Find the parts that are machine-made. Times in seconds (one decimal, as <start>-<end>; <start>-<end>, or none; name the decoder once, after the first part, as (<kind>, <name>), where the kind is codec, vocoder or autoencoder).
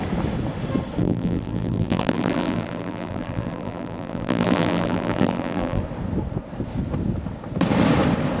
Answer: 1.0-5.8 (vocoder, BigVGAN v2)